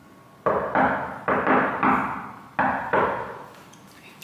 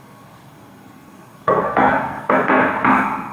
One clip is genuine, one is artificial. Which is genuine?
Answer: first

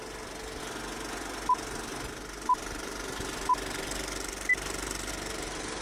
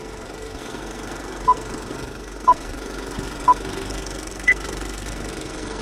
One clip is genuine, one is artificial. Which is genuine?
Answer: first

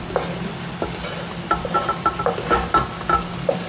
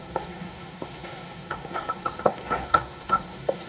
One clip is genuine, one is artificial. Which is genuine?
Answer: first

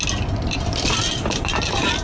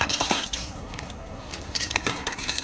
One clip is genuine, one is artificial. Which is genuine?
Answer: first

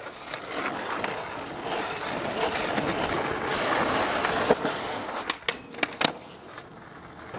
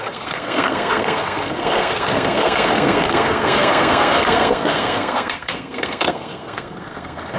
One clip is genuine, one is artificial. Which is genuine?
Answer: first